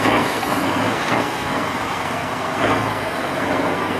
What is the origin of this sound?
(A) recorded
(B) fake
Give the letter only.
B